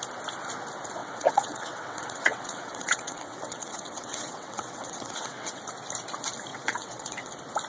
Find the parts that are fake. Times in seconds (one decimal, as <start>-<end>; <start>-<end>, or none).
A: 1.0-5.6; 6.5-7.3